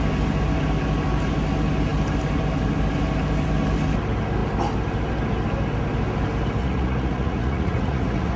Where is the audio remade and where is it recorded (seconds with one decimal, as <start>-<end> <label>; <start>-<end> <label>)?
0.0-6.6 recorded; 6.6-8.4 remade